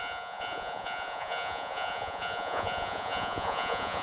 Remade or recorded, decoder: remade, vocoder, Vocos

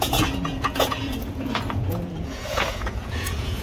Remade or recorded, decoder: remade, vocoder, Vocos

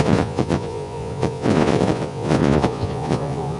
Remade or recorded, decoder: remade, vocoder, Vocos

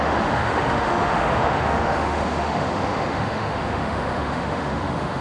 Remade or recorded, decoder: remade, autoencoder, DAC-VAE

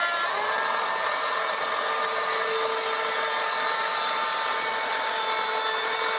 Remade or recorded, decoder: recorded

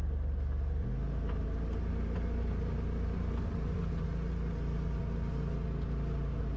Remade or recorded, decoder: recorded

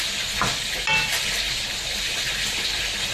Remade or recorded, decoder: recorded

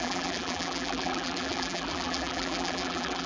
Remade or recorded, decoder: remade, vocoder, BigVGAN v2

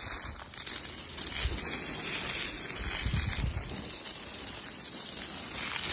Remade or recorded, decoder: recorded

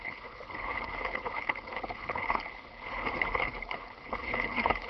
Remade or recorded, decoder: remade, codec, HILCodec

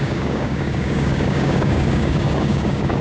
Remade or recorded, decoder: remade, codec, DAC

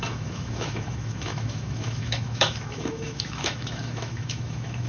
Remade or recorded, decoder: remade, autoencoder, DAC-VAE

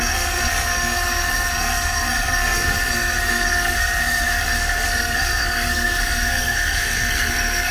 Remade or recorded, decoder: remade, codec, SNAC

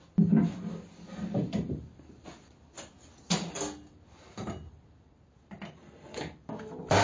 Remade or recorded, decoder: recorded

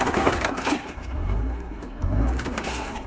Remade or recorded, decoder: remade, codec, SNAC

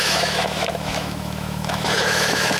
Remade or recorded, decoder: remade, autoencoder, DAC-VAE